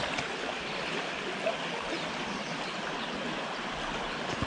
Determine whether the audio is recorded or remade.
recorded